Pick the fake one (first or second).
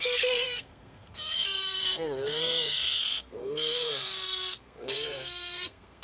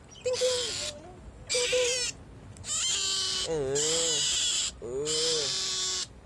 first